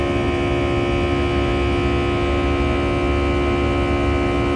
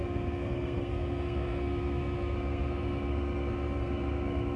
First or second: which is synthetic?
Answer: second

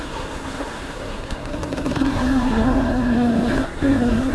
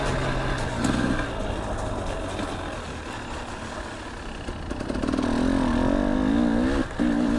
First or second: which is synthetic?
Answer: first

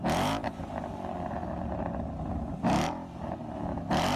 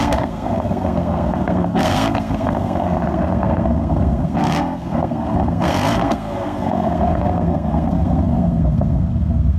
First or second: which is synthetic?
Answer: second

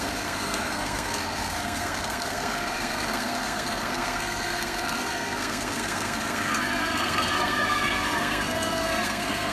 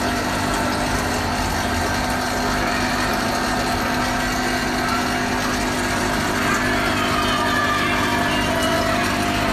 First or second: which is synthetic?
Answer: first